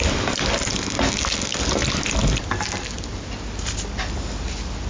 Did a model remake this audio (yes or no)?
no